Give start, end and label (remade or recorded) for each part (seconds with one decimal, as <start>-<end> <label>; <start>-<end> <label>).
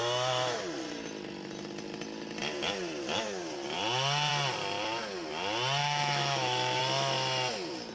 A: 0.0-0.6 remade; 0.6-5.8 recorded; 5.8-6.8 remade; 6.8-7.9 recorded